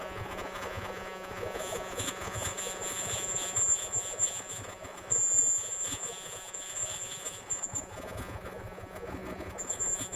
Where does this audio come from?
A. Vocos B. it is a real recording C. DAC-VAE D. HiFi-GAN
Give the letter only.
A